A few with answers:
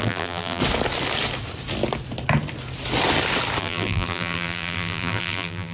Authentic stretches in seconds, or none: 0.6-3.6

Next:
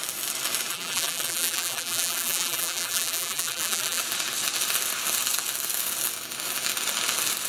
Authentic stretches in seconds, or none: 0.0-0.7; 4.0-7.5

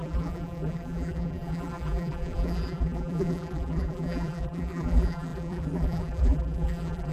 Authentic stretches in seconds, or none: none

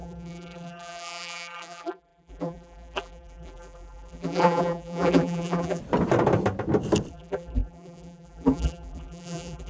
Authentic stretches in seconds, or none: 5.8-7.1

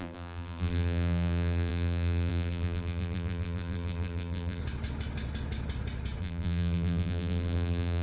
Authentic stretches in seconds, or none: 4.6-6.2